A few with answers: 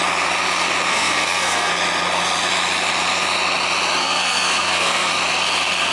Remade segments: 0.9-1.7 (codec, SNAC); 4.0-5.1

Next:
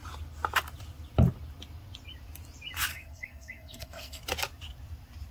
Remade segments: 2.9-4.2 (codec, SNAC)

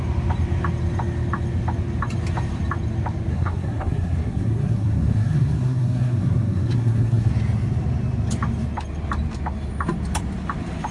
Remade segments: 3.3-7.3 (codec, SNAC)